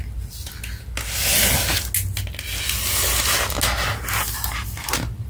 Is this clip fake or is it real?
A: real